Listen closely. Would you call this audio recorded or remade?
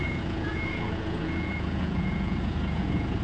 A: remade